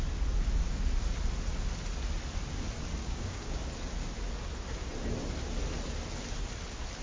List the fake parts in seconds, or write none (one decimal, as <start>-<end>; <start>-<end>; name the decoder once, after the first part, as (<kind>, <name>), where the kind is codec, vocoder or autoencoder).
3.0-3.6 (codec, DAC)